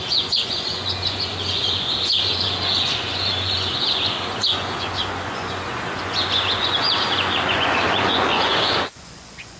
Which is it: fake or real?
fake